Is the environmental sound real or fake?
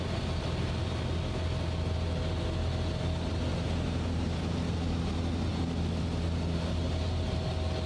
real